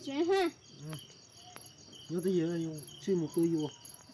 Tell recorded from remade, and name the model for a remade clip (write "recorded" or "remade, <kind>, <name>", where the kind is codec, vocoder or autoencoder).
recorded